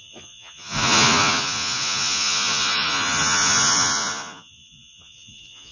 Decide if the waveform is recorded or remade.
remade